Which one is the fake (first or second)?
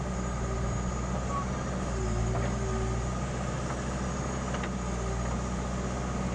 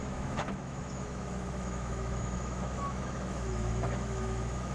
second